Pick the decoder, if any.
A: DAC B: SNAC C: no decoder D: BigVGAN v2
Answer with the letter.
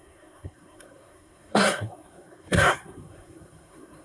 B